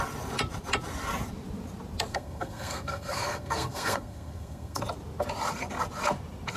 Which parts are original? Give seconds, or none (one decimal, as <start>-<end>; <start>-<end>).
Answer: 0.0-2.1; 4.8-6.6